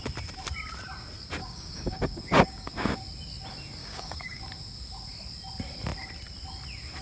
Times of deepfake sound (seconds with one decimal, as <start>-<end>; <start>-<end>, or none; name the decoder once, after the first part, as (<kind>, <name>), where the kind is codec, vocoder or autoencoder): 1.4-3.0 (codec, DAC); 3.8-4.4